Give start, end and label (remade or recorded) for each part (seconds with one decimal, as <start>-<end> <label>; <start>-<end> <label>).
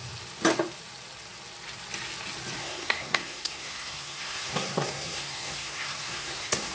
0.0-2.6 recorded; 2.6-6.7 remade